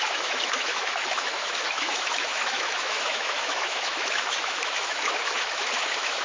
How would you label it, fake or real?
fake